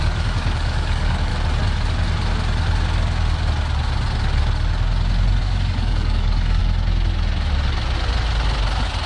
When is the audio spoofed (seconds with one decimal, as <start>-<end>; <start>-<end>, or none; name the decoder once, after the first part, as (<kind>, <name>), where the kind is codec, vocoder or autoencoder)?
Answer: 0.0-1.3 (codec, DAC); 5.4-6.6